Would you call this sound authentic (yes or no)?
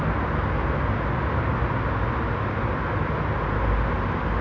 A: yes